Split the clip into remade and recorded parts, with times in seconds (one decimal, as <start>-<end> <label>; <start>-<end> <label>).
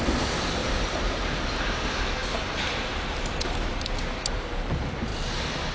0.0-0.6 recorded; 0.6-1.6 remade; 1.6-2.2 recorded; 2.2-4.5 remade; 4.5-5.7 recorded